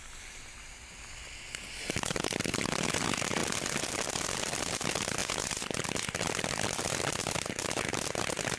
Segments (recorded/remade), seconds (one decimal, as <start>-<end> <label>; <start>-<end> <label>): 0.0-8.6 recorded